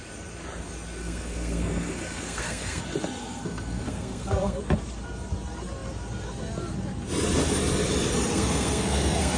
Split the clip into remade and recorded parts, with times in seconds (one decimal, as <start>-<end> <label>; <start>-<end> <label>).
0.0-1.0 recorded; 1.0-2.8 remade; 2.8-3.2 recorded; 3.2-4.6 remade; 4.6-8.3 recorded; 8.3-9.4 remade